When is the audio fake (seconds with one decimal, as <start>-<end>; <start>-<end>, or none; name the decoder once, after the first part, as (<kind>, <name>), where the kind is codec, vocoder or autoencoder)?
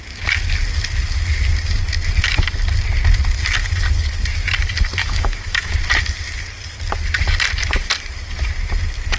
5.0-5.7 (autoencoder, DAC-VAE)